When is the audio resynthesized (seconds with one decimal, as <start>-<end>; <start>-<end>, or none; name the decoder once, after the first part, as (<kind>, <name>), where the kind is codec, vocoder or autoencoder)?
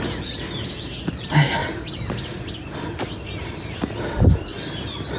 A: none